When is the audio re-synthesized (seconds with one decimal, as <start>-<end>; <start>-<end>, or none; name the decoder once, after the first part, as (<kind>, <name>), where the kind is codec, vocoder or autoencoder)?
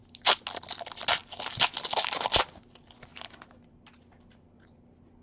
none